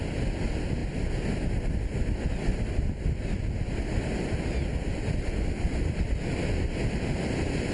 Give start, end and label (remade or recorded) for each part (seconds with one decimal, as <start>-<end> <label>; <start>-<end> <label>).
0.0-7.7 recorded